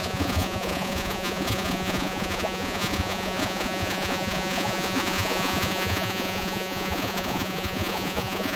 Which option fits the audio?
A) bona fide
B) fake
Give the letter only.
B